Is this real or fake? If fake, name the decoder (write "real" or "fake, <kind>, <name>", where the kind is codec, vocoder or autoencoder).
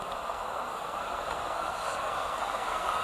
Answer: fake, codec, SNAC